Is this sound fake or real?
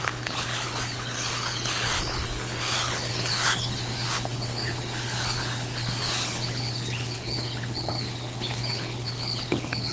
fake